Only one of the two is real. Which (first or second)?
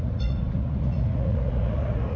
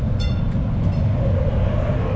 second